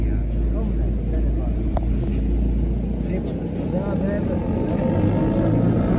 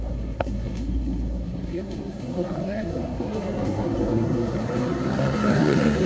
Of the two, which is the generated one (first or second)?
second